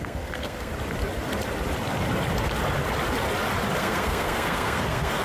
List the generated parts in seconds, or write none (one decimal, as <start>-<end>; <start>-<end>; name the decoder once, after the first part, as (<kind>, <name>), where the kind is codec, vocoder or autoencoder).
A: 0.0-0.7 (codec, SNAC); 3.8-5.2